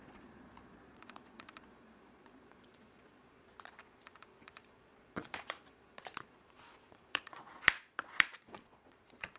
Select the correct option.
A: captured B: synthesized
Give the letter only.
B